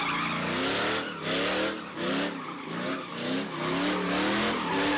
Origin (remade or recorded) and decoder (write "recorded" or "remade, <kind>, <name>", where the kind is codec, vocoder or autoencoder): recorded